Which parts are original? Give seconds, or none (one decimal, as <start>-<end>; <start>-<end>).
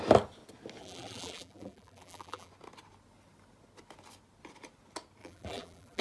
0.0-0.8; 2.5-5.2